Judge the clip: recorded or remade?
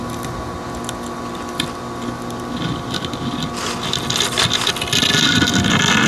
recorded